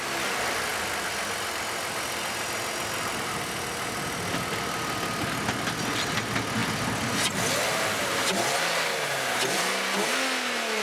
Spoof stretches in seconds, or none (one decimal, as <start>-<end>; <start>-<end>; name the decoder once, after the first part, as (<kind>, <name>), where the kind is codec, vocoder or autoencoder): none